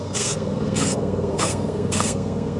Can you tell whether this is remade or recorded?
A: remade